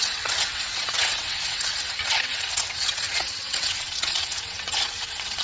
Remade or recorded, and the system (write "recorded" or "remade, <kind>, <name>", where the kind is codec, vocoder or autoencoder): remade, vocoder, WaveNeXt